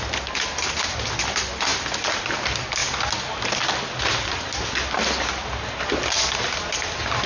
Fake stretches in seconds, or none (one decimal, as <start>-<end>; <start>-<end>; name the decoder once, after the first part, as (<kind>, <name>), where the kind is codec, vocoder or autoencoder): none